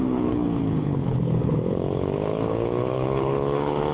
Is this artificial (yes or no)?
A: yes